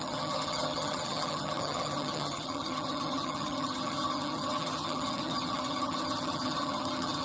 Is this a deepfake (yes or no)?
yes